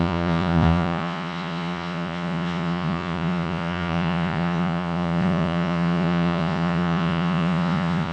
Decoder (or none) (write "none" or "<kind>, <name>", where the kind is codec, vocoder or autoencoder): vocoder, Vocos